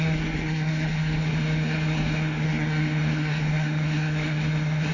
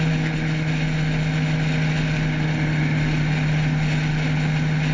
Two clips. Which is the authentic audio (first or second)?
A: second